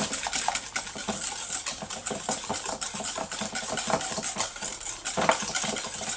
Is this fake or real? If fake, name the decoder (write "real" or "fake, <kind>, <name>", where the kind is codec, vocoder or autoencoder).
real